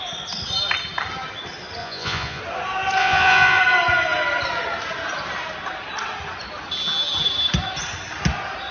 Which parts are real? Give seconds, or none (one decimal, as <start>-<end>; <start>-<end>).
0.0-1.8; 2.4-3.0; 3.6-8.7